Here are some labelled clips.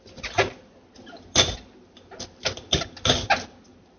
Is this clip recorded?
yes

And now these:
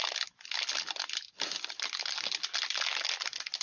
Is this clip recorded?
yes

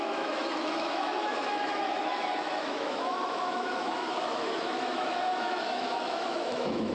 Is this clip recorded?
no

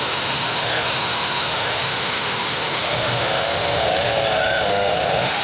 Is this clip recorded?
no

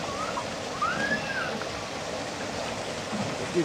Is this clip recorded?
yes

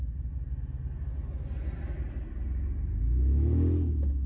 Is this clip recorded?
yes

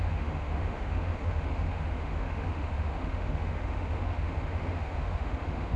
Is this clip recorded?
no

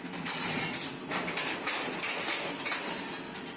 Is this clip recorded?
yes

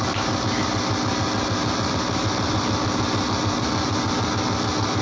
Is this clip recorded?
yes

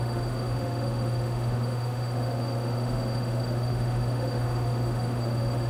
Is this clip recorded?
no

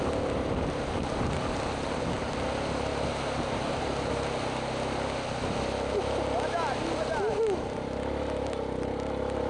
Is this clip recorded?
yes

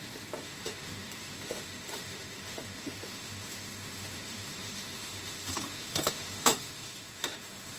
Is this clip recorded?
no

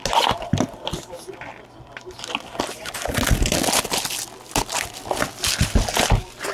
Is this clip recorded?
yes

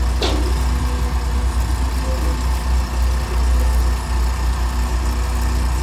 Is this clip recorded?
yes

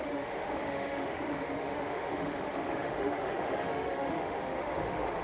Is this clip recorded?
no